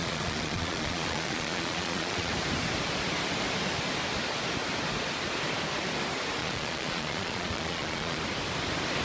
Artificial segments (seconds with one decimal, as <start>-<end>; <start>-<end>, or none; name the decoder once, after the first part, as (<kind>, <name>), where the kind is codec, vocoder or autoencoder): 0.0-2.3 (vocoder, Vocos); 6.4-8.2